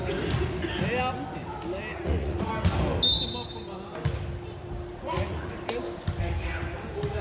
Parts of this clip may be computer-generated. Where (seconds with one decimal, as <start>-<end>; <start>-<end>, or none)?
1.9-2.5; 4.9-5.5